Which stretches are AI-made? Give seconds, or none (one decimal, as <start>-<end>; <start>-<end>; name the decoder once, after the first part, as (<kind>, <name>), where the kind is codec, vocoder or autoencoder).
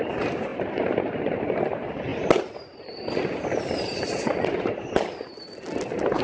none